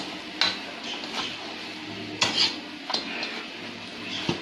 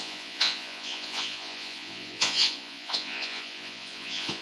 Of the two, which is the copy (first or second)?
second